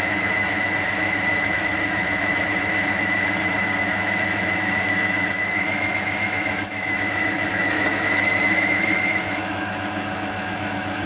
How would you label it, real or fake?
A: fake